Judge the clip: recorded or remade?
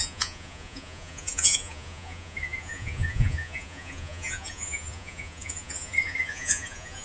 remade